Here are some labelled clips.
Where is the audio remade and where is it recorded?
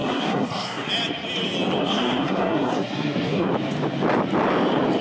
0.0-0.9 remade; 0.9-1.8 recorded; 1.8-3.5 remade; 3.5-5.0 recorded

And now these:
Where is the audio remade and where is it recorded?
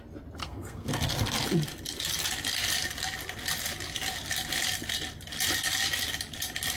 0.0-0.4 recorded; 0.4-0.9 remade; 0.9-6.8 recorded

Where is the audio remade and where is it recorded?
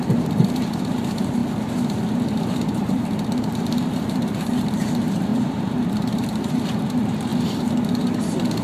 0.0-1.4 remade; 1.4-2.3 recorded; 2.3-7.3 remade; 7.3-8.6 recorded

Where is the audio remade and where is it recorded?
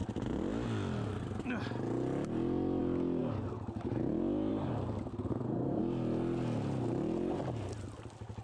0.0-5.1 recorded; 5.1-5.8 remade; 5.8-8.4 recorded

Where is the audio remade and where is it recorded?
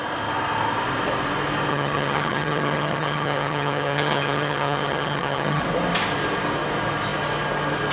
0.0-1.7 recorded; 1.7-5.6 remade; 5.6-7.9 recorded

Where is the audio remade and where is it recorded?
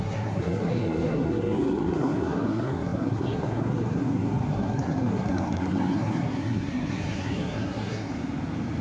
0.0-8.1 remade; 8.1-8.8 recorded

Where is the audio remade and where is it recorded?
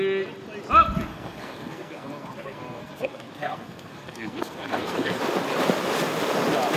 0.0-1.1 recorded; 1.1-5.2 remade; 5.2-6.8 recorded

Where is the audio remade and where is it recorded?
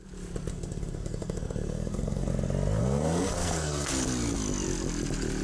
0.0-0.5 recorded; 0.5-2.3 remade; 2.3-2.8 recorded; 2.8-3.9 remade; 3.9-5.4 recorded